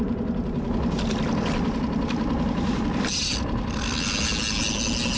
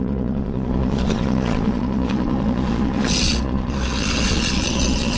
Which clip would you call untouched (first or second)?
first